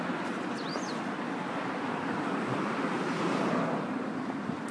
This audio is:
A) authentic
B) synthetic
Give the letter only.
A